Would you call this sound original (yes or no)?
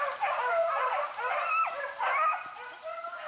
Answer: yes